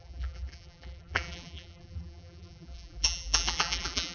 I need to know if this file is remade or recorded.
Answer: remade